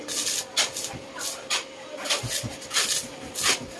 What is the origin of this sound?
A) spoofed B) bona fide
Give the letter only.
B